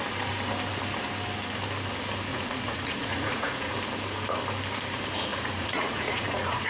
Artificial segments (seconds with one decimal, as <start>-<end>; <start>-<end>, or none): 2.3-3.7; 5.3-6.7